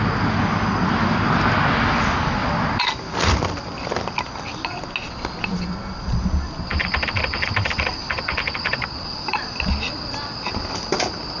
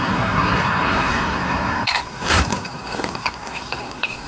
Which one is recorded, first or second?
first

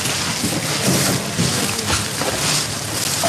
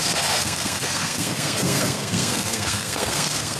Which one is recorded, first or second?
first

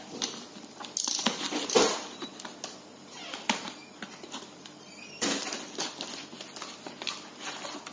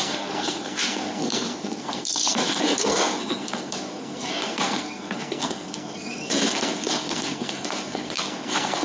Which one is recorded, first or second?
first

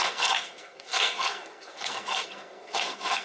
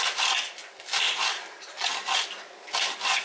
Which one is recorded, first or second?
second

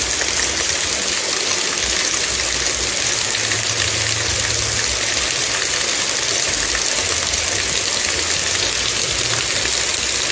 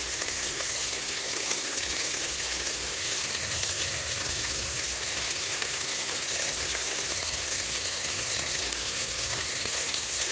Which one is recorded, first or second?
first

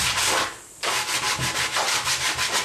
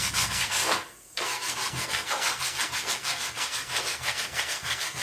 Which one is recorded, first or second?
first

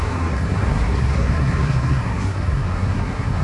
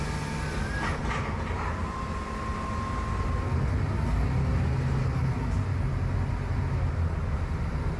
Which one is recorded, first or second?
second